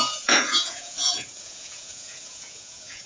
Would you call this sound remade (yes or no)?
yes